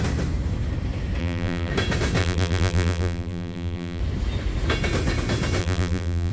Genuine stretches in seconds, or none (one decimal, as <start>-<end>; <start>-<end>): 0.0-1.2; 1.7-2.2; 4.0-5.6

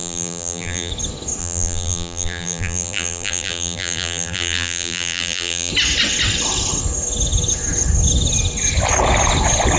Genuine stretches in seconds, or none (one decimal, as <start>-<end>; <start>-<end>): 0.9-1.4; 5.7-9.8

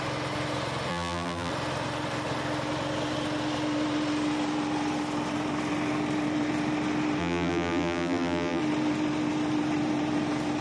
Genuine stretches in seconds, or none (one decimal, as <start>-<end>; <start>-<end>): 0.0-0.9; 1.5-7.2; 8.6-10.6